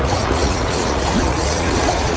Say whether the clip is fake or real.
fake